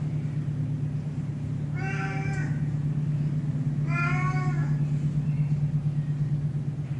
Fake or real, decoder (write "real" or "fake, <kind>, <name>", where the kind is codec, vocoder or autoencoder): real